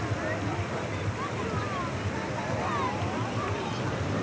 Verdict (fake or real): real